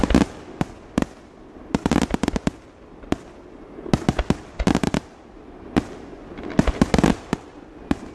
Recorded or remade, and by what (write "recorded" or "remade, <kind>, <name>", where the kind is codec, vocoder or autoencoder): recorded